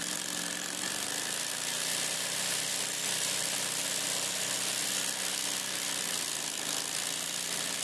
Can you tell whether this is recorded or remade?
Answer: recorded